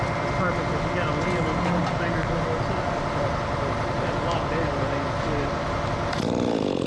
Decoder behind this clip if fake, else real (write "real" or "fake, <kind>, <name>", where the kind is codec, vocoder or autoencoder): real